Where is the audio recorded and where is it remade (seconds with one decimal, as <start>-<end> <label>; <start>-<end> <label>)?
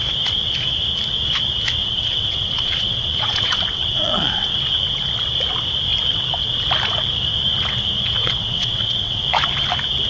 0.0-1.8 recorded; 1.8-4.5 remade; 4.5-8.2 recorded; 8.2-9.2 remade; 9.2-10.1 recorded